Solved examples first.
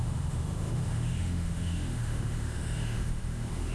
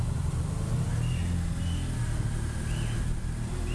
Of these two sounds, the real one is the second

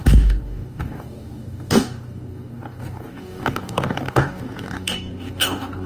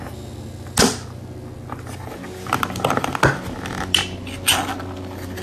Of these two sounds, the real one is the second